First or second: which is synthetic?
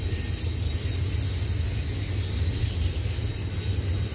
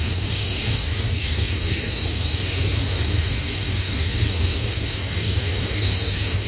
second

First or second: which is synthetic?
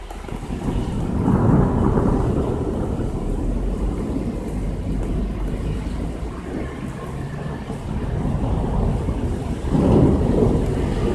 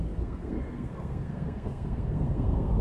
second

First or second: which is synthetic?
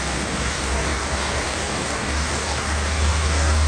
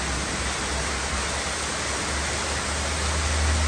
first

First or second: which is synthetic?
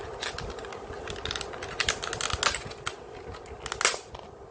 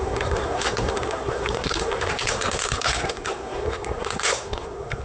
second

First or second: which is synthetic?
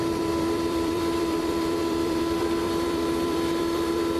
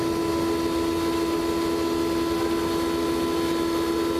first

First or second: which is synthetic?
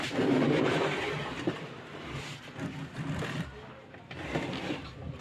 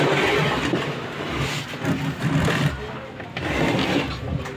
first